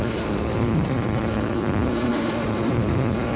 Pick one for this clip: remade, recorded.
remade